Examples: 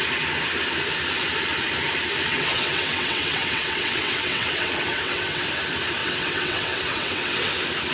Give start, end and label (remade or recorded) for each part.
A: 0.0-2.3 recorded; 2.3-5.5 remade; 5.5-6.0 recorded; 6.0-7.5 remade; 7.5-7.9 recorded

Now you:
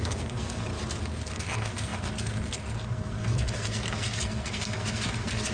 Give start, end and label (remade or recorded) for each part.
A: 0.0-0.7 remade; 0.7-1.3 recorded; 1.3-5.5 remade

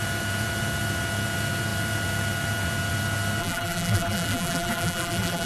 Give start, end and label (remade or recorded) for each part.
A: 0.0-3.4 recorded; 3.4-5.5 remade

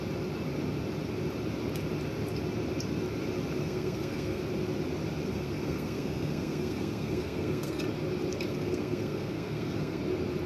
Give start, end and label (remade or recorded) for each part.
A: 0.0-3.6 recorded; 3.6-4.4 remade; 4.4-5.3 recorded; 5.3-7.8 remade; 7.8-8.5 recorded; 8.5-10.0 remade; 10.0-10.5 recorded

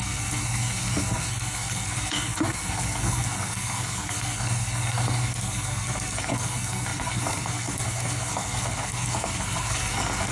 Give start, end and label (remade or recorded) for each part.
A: 0.0-10.3 remade